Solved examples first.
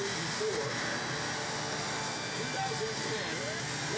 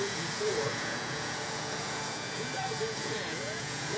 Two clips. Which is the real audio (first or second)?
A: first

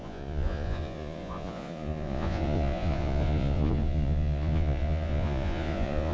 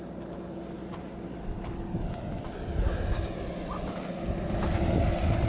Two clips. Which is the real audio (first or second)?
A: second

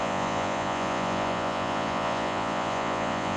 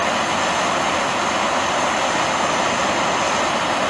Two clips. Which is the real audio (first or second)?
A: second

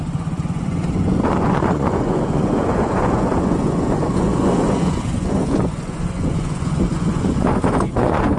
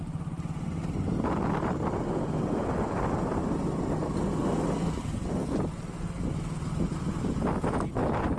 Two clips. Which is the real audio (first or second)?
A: second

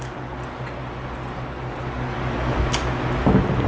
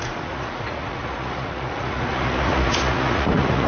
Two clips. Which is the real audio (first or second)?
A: first